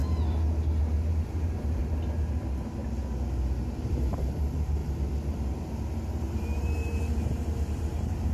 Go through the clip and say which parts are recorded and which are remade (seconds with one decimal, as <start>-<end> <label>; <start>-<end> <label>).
0.0-0.8 recorded; 0.8-1.8 remade; 1.8-2.4 recorded; 2.4-2.8 remade; 2.8-3.8 recorded; 3.8-4.8 remade; 4.8-6.2 recorded; 6.2-8.3 remade